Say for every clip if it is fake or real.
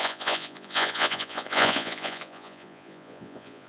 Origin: fake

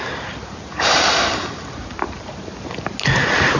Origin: real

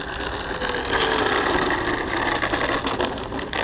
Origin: real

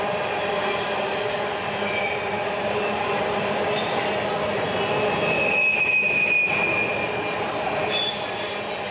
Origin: real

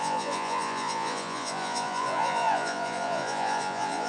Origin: fake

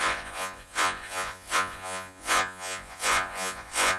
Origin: fake